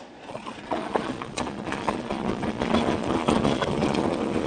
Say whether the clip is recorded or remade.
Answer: remade